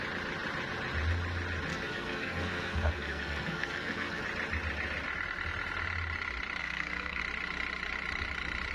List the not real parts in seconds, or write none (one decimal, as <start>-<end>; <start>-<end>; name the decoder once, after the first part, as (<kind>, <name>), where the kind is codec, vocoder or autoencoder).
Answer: 1.7-4.2 (codec, SNAC); 6.6-7.2